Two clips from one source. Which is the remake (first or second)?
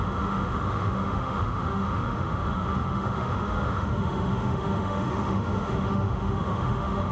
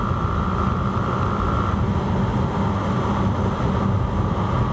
first